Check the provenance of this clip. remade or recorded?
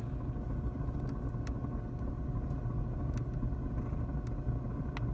recorded